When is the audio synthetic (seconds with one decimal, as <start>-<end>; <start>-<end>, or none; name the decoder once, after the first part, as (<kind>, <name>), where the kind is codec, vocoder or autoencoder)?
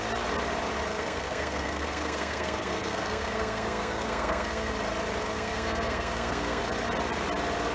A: 0.9-4.7 (codec, SNAC); 5.2-6.6